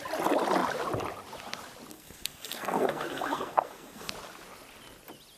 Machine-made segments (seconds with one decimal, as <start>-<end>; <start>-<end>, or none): 1.9-4.1